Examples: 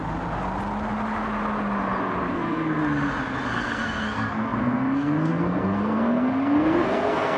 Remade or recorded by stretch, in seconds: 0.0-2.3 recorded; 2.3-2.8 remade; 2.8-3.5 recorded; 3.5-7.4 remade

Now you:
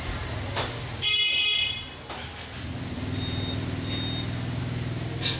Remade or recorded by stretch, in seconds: 0.0-5.4 recorded

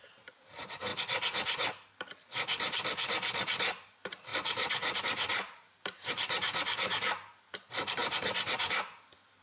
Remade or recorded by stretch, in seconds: 0.0-0.9 remade; 0.9-2.0 recorded; 2.0-9.4 remade

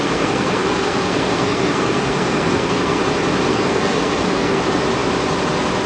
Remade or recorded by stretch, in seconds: 0.0-3.0 remade; 3.0-3.5 recorded; 3.5-4.6 remade; 4.6-5.9 recorded

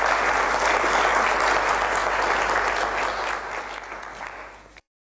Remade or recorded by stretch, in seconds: 0.0-5.1 recorded